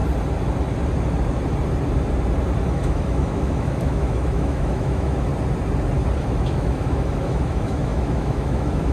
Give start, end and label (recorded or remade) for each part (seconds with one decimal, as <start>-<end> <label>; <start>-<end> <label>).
0.0-2.7 recorded; 2.7-5.3 remade; 5.3-6.2 recorded; 6.2-8.9 remade

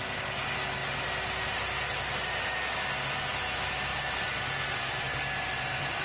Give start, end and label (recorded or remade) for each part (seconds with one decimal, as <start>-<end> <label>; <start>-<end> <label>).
0.0-6.0 recorded